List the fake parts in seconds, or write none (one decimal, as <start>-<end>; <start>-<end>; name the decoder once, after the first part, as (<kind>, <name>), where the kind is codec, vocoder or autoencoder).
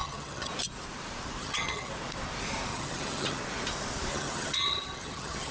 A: 0.0-0.5 (vocoder, HiFi-GAN); 1.4-1.9; 2.7-3.4; 4.1-5.5